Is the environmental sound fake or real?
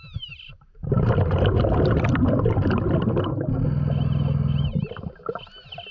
real